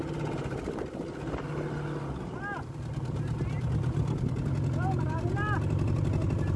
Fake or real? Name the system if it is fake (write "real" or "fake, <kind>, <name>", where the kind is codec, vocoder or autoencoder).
real